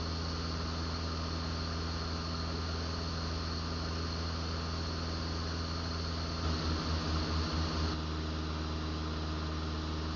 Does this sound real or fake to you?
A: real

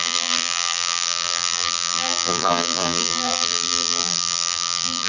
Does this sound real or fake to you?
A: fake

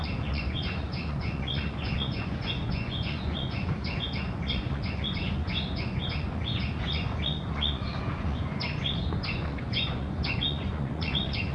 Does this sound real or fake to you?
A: fake